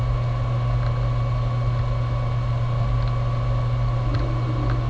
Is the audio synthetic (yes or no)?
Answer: no